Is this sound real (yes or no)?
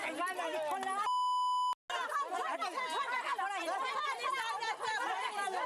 yes